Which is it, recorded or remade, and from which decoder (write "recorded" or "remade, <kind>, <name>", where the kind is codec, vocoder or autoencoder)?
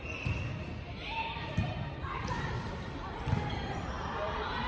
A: recorded